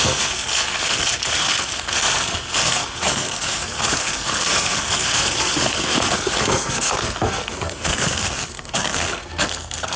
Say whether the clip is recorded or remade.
remade